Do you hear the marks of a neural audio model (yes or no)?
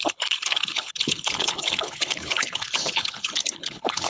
yes